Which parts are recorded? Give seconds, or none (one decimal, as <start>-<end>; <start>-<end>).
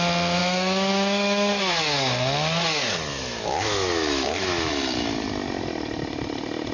0.0-0.4; 1.7-3.1; 4.7-6.7